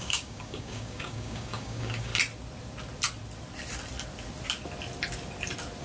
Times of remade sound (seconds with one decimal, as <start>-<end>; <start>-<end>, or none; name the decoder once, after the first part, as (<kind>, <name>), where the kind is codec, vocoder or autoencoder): 0.0-2.1 (codec, DAC)